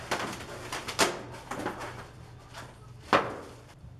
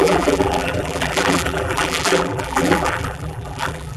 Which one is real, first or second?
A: first